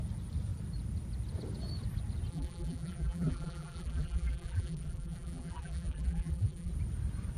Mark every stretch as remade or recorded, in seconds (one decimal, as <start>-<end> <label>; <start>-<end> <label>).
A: 0.0-2.3 recorded; 2.3-6.7 remade; 6.7-7.4 recorded

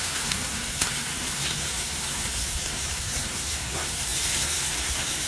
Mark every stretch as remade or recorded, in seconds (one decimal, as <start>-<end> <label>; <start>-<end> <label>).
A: 0.0-5.3 remade

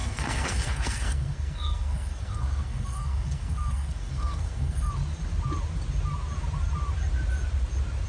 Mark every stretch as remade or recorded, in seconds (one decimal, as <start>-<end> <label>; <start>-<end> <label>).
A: 0.0-4.9 remade; 4.9-8.1 recorded